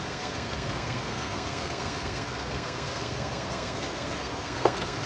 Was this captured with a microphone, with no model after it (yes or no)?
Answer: no